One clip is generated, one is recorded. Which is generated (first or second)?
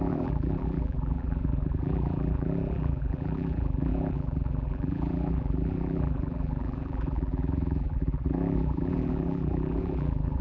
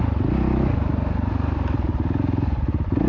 first